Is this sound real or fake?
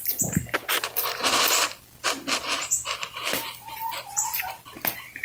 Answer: fake